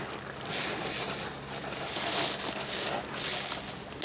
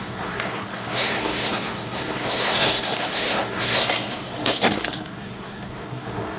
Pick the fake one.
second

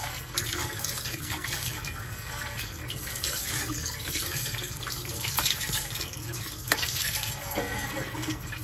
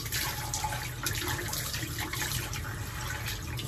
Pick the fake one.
first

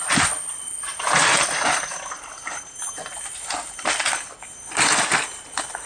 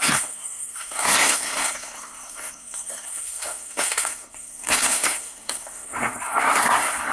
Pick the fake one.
second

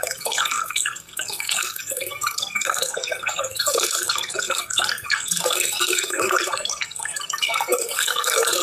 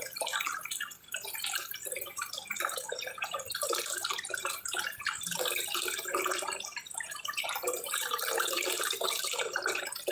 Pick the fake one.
first